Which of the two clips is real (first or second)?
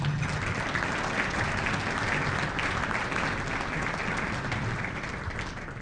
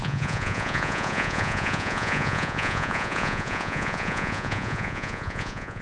first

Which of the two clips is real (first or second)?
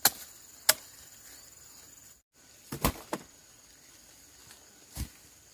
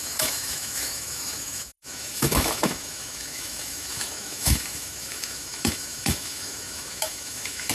first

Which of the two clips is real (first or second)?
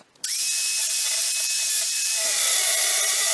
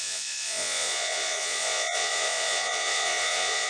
first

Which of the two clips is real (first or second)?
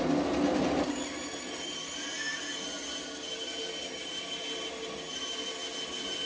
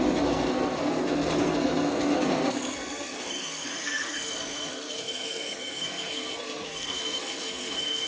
first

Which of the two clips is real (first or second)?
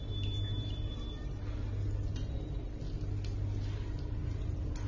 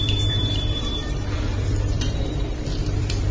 first